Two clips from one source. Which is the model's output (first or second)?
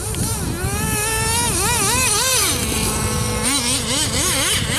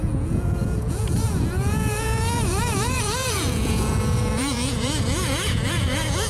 second